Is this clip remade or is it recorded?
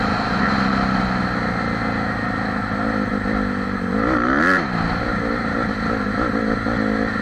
recorded